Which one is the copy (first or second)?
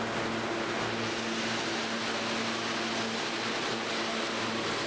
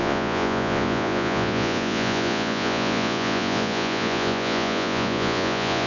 second